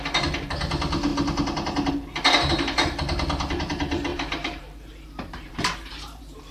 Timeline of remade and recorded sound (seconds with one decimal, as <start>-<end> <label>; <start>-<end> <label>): 0.0-4.1 recorded; 4.1-6.5 remade